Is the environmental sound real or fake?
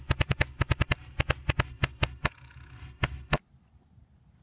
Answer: real